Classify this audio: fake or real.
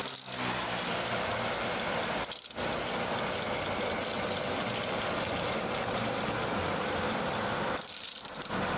real